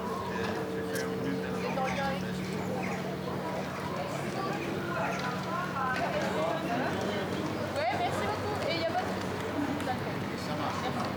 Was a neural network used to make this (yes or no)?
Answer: no